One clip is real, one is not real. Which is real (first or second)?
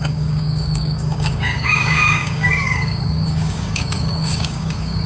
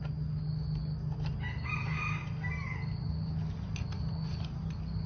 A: second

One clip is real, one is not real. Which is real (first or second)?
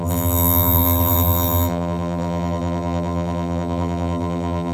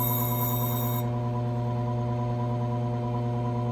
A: second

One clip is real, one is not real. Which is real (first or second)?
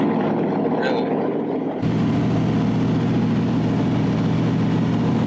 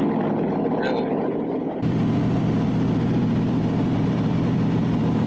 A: first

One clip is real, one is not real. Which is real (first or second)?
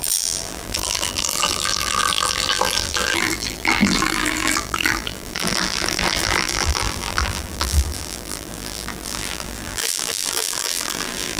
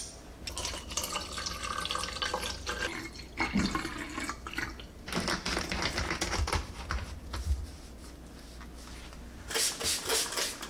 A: second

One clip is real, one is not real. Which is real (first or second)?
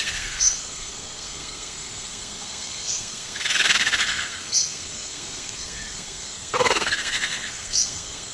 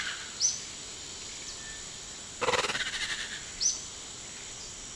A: second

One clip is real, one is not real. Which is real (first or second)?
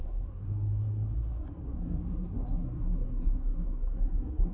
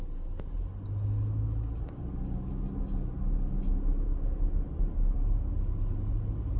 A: second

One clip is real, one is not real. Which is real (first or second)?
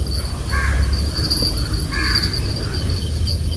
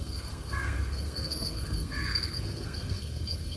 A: first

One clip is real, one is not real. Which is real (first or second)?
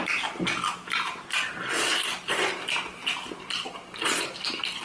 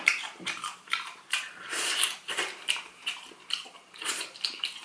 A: first